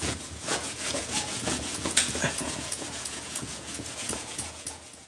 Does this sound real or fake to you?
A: fake